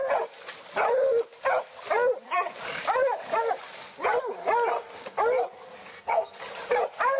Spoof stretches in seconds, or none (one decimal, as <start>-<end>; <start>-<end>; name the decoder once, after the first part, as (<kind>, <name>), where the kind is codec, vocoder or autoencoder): 5.9-6.4 (codec, SNAC)